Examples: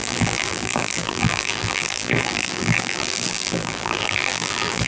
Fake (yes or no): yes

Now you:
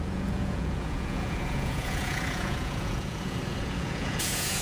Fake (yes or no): yes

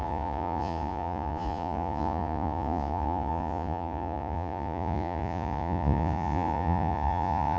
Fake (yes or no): yes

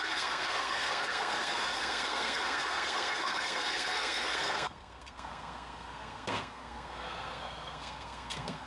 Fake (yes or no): yes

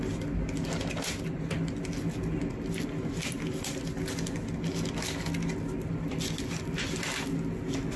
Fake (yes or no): no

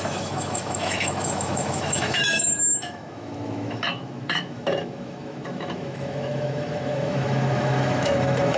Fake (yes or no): yes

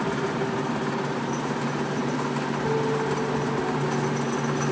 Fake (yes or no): no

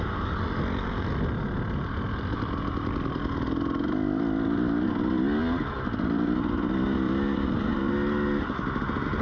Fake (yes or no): no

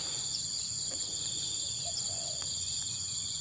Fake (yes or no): yes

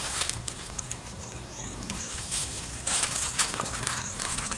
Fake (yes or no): yes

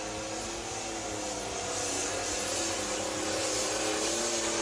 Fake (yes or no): no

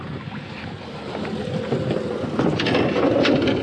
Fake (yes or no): no